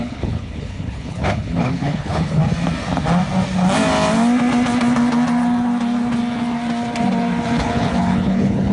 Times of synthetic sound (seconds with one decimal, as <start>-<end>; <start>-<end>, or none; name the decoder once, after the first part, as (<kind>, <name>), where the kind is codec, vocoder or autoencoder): 0.0-2.4 (codec, HILCodec); 7.6-8.7